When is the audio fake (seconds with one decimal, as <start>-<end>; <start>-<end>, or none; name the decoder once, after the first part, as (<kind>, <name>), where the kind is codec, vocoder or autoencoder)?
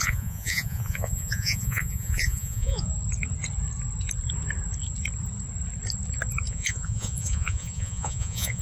0.0-2.9 (vocoder, Vocos); 6.5-8.6